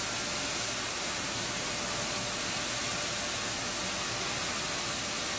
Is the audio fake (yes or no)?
no